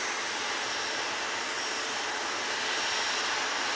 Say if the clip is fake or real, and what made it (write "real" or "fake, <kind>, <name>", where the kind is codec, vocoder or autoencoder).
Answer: real